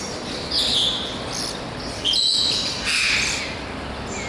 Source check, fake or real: real